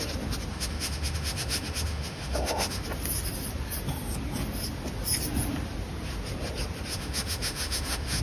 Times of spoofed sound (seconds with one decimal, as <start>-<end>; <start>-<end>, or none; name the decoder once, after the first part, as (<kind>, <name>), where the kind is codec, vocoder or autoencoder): 0.5-2.8 (autoencoder, DAC-VAE); 6.9-8.2